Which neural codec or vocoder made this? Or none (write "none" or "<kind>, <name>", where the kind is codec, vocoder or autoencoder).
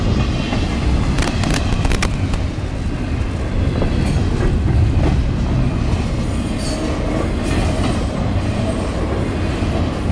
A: none